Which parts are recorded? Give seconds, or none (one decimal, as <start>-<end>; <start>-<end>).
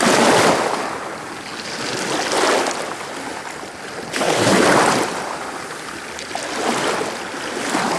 0.0-8.0